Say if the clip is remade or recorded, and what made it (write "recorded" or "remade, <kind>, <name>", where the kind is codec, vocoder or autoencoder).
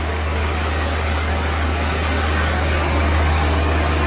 remade, codec, DAC